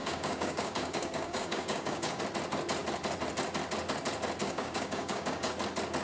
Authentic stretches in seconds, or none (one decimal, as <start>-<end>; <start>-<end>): 2.2-4.4; 5.5-6.0